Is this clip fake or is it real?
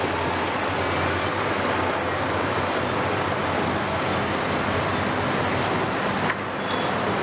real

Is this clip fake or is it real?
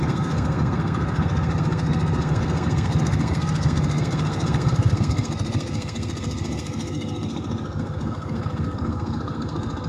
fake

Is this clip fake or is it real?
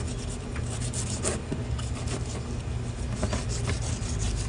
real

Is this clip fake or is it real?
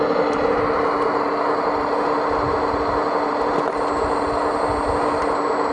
real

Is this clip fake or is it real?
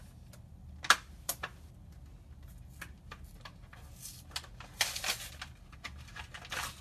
real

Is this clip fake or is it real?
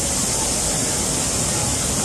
real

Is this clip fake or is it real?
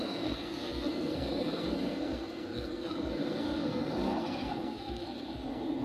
fake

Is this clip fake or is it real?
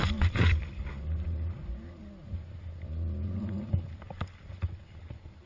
real